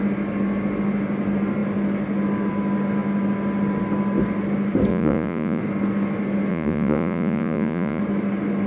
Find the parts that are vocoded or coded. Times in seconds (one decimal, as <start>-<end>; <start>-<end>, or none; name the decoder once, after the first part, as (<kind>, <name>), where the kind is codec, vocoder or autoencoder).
4.9-5.6 (vocoder, Vocos); 6.5-8.0